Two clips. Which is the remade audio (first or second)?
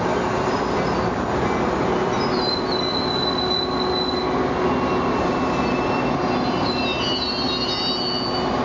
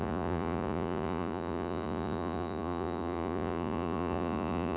second